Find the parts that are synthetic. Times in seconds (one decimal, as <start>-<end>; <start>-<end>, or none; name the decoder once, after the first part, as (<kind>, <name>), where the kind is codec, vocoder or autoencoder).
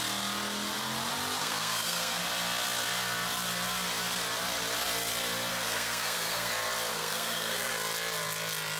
1.4-2.2 (codec, SNAC); 5.5-6.5; 6.9-7.7